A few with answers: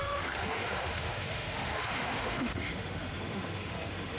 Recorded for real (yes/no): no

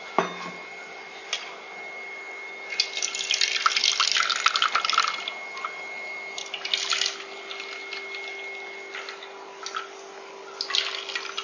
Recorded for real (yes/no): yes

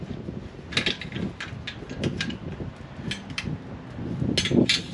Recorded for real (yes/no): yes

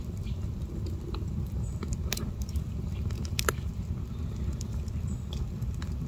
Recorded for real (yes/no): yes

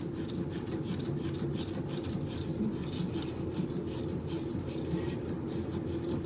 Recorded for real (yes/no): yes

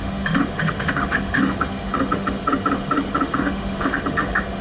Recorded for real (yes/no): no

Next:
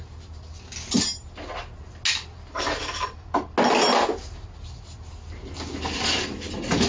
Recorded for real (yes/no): yes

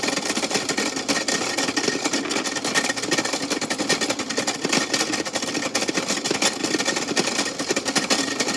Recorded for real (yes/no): yes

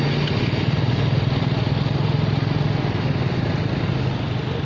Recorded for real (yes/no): yes